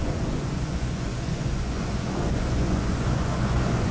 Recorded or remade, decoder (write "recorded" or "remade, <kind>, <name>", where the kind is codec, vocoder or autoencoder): remade, vocoder, Vocos